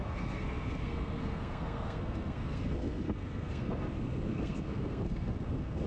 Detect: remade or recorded remade